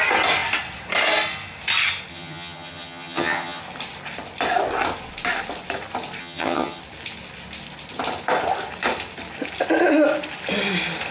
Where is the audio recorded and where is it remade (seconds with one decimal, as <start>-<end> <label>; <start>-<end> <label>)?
0.0-2.1 recorded; 2.1-3.6 remade; 3.6-6.2 recorded; 6.2-6.8 remade; 6.8-11.1 recorded